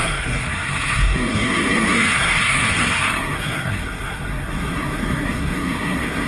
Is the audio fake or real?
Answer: fake